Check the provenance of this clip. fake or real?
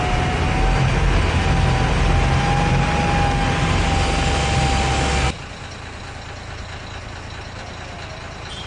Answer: real